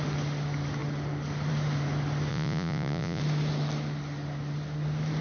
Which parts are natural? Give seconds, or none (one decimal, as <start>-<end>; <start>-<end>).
0.0-2.3; 3.2-5.2